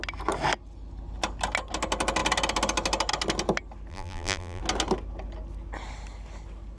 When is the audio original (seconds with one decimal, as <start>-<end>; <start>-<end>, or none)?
0.0-3.9; 4.6-6.8